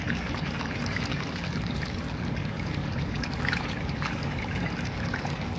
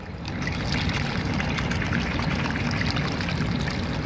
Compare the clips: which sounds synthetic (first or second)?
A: first